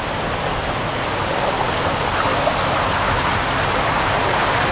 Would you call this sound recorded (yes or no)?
yes